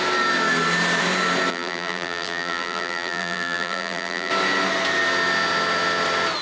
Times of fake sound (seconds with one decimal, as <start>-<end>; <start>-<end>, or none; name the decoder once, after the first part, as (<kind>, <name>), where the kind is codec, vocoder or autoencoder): 1.5-4.3 (vocoder, BigVGAN v2)